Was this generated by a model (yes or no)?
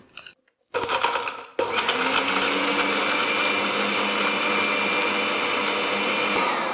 no